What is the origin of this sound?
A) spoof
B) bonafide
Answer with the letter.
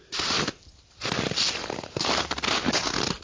B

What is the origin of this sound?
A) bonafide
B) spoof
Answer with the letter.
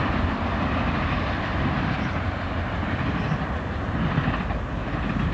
A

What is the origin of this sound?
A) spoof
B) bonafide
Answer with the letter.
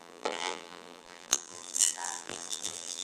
A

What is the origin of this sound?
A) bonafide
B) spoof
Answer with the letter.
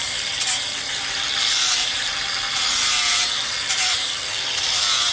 B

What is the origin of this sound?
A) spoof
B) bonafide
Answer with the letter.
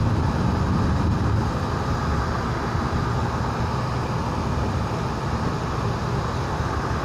B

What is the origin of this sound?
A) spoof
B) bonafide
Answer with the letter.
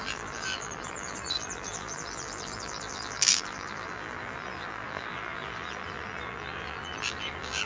A